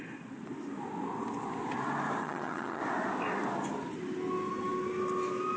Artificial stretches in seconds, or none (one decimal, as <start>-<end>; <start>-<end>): 2.2-2.8